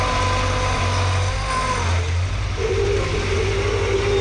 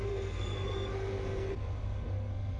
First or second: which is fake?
second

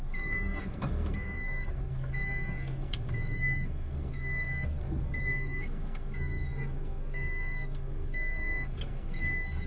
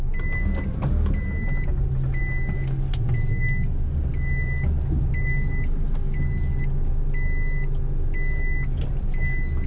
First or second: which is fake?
first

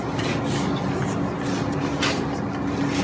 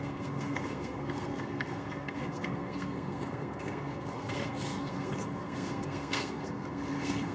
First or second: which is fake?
second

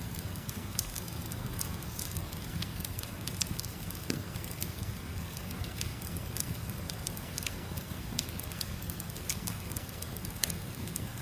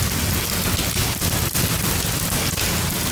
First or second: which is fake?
first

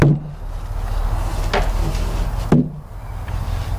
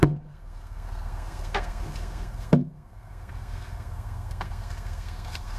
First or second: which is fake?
second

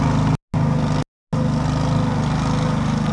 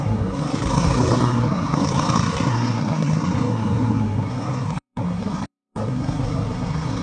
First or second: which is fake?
second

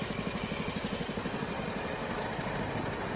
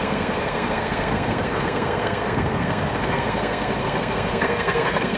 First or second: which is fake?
second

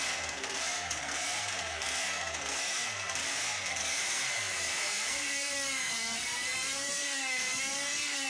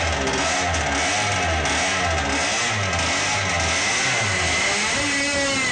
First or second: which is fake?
first